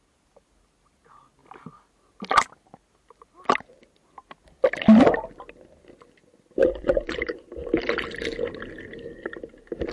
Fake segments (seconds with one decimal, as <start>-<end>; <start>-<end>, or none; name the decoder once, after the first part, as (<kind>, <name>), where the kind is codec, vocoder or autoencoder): 6.6-7.4 (vocoder, Vocos)